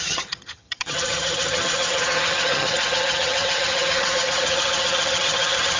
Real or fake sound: fake